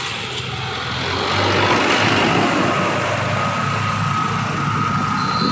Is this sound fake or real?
real